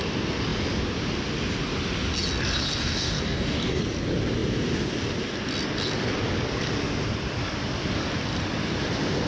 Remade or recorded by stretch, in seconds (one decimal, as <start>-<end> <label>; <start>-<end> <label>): 0.0-2.8 recorded; 2.8-3.8 remade; 3.8-9.3 recorded